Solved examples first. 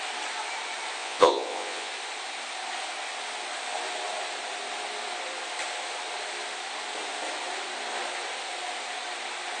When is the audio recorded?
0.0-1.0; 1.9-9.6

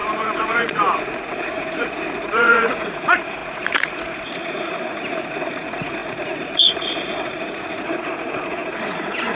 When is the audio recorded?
none

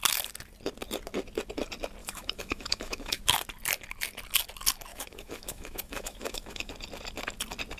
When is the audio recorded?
0.0-2.0; 3.2-4.9; 6.7-7.8

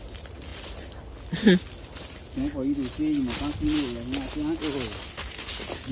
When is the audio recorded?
0.0-0.5; 1.2-5.9

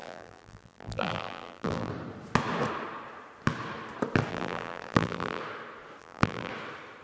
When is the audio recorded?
1.9-4.3; 5.4-6.0; 6.5-7.0

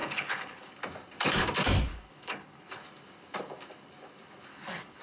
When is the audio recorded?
0.7-1.9; 2.8-4.5